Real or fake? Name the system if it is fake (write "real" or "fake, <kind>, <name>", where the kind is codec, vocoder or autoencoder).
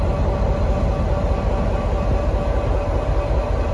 real